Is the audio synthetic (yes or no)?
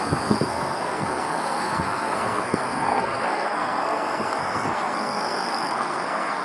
yes